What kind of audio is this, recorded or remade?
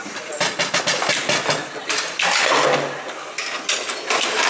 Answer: recorded